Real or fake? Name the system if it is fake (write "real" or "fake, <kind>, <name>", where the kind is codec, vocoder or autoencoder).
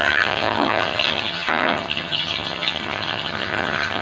fake, vocoder, HiFi-GAN